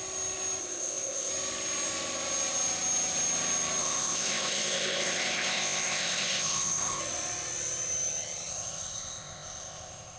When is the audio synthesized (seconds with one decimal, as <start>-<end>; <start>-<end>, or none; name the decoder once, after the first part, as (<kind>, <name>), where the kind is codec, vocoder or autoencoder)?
0.6-1.3 (codec, ZipCodec); 3.8-7.0; 8.5-10.2